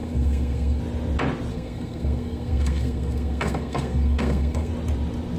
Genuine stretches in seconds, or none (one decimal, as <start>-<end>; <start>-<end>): 0.8-1.5; 4.7-5.4